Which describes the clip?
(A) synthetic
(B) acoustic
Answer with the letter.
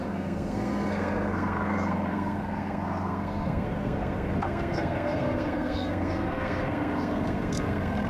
A